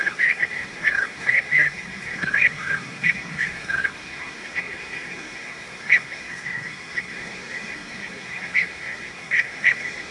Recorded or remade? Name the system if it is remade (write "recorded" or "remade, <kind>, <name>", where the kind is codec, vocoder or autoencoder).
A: remade, codec, SNAC